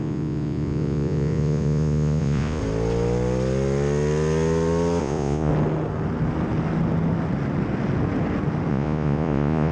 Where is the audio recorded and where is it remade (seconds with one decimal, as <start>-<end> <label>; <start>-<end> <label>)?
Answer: 0.0-2.6 remade; 2.6-5.0 recorded; 5.0-5.5 remade; 5.5-8.7 recorded; 8.7-9.7 remade